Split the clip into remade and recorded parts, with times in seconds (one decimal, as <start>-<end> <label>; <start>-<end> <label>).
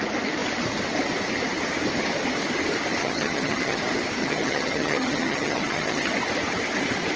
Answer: 0.0-3.0 recorded; 3.0-3.8 remade; 3.8-4.2 recorded; 4.2-6.1 remade; 6.1-7.2 recorded